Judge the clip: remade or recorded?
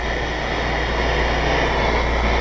recorded